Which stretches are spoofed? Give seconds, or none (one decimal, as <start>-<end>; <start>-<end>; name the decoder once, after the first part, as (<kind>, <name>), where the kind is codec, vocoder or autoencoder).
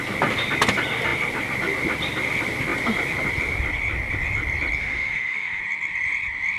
4.8-5.6 (autoencoder, DAC-VAE)